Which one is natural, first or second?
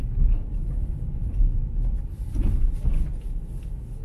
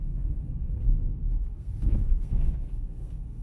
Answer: first